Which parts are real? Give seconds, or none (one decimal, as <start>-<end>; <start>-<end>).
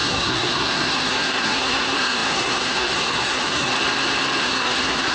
3.7-4.4